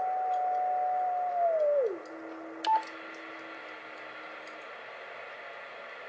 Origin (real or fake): real